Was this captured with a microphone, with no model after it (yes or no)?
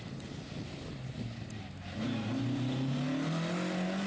yes